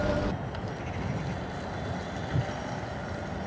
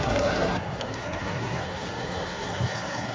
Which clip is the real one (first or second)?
first